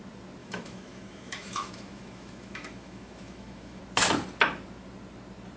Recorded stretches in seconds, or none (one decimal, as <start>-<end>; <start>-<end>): 0.0-0.4; 3.8-5.6